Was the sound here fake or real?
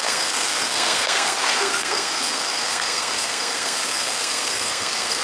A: fake